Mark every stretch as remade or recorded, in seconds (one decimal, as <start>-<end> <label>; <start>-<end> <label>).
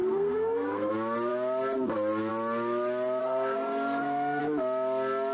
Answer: 0.0-0.9 remade; 0.9-3.2 recorded; 3.2-4.4 remade; 4.4-5.3 recorded